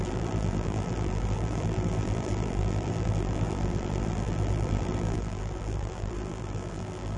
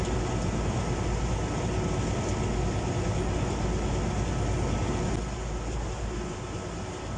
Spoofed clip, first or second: first